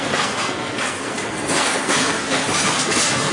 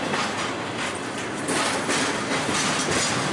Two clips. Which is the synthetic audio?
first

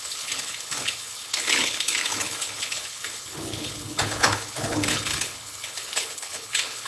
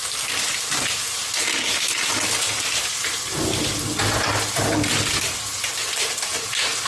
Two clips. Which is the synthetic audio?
first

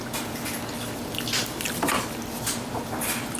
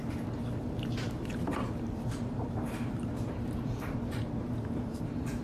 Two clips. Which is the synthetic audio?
second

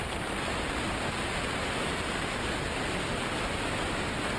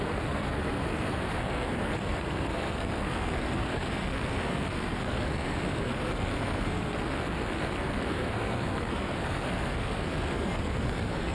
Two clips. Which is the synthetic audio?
second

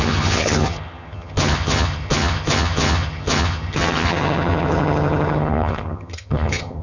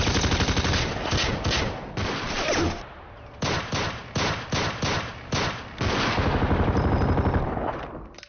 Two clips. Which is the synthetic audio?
first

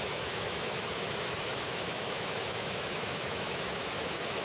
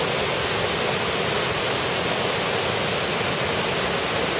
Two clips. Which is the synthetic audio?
first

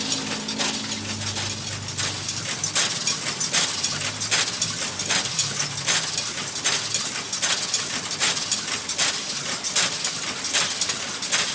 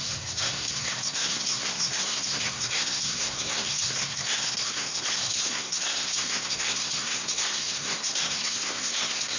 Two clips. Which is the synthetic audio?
second